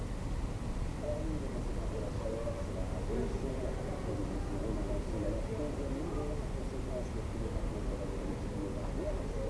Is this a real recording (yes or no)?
yes